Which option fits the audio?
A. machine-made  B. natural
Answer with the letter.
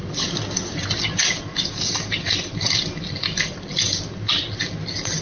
B